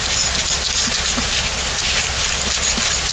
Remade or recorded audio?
recorded